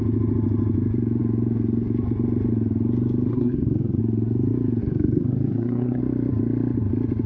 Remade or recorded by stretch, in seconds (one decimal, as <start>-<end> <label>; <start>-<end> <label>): 0.0-3.3 recorded; 3.3-4.0 remade; 4.0-4.8 recorded; 4.8-6.0 remade; 6.0-7.3 recorded